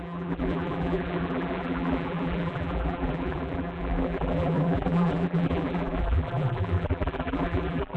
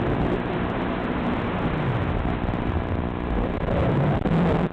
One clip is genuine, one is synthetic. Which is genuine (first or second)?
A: second